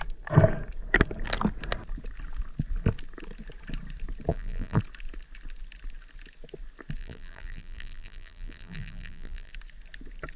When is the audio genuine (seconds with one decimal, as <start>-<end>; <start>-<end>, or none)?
0.0-4.3; 4.8-7.0; 9.5-10.4